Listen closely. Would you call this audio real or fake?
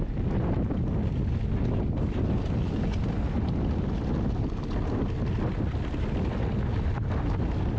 real